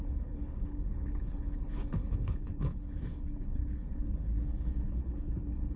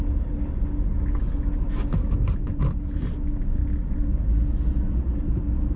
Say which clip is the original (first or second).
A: second